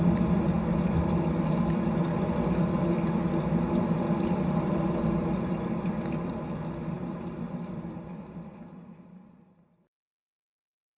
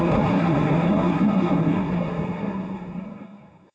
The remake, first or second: second